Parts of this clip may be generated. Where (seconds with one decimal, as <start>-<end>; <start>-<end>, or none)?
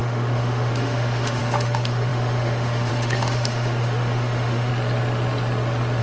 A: 0.0-4.7